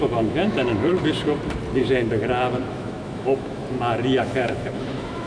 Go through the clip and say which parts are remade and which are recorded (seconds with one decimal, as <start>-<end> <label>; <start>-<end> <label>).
0.0-0.9 remade; 0.9-1.8 recorded; 1.8-2.2 remade; 2.2-2.7 recorded; 2.7-3.6 remade; 3.6-4.2 recorded; 4.2-5.3 remade

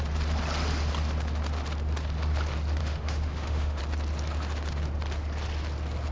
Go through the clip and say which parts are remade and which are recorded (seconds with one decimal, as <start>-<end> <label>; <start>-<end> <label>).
0.0-2.8 recorded; 2.8-3.8 remade; 3.8-6.1 recorded

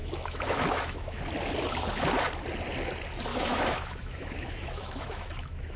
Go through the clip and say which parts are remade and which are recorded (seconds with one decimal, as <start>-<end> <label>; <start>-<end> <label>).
0.0-1.2 remade; 1.2-3.3 recorded; 3.3-5.8 remade

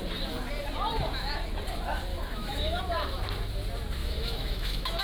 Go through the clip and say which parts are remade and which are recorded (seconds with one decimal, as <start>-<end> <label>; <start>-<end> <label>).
0.0-2.1 recorded; 2.1-2.8 remade; 2.8-4.0 recorded; 4.0-5.0 remade

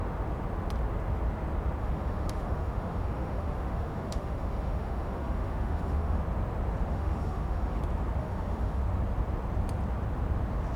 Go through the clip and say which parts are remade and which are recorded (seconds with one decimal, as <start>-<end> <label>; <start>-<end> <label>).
0.0-1.8 recorded; 1.8-6.2 remade; 6.2-6.9 recorded; 6.9-7.8 remade; 7.8-8.2 recorded; 8.2-8.8 remade; 8.8-10.8 recorded

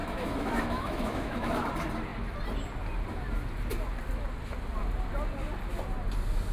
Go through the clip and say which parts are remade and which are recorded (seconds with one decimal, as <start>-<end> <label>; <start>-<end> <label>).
0.0-1.7 remade; 1.7-6.5 recorded

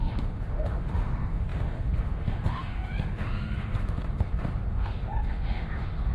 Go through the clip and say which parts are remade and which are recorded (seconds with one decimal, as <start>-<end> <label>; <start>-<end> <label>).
0.0-6.1 remade